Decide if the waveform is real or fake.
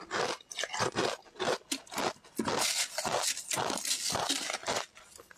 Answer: real